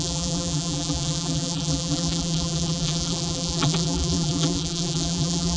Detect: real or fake fake